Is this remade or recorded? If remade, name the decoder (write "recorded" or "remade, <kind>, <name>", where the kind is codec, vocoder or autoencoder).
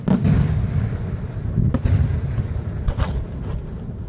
recorded